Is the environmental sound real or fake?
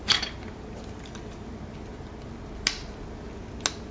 real